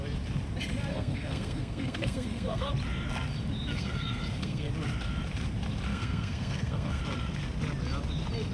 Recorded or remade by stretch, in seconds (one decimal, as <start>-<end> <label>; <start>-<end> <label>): 0.0-0.9 recorded; 0.9-2.7 remade; 2.7-3.7 recorded; 3.7-4.7 remade; 4.7-5.9 recorded; 5.9-7.0 remade; 7.0-8.5 recorded